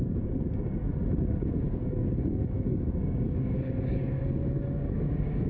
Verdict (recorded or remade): remade